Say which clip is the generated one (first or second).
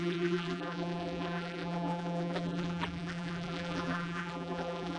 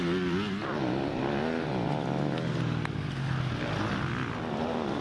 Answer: first